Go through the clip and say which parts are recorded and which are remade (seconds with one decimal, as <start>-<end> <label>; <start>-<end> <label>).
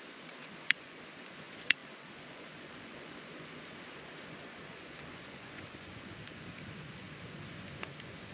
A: 0.0-8.3 remade